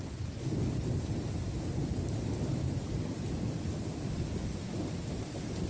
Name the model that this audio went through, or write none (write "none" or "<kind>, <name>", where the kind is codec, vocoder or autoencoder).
none